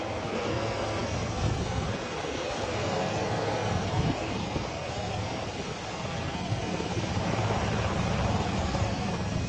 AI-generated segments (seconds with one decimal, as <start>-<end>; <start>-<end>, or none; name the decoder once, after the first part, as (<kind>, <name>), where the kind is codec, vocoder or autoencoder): 0.0-5.4 (codec, SNAC); 5.9-7.1; 8.3-9.5